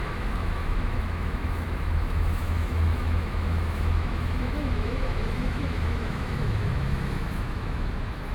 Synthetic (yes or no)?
yes